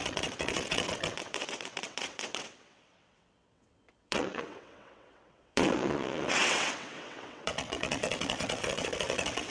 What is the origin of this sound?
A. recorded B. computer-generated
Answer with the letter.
B